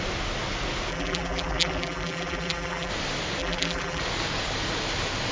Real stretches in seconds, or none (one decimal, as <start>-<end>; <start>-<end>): 0.0-0.9; 2.9-3.4; 4.0-5.3